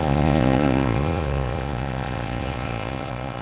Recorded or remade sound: remade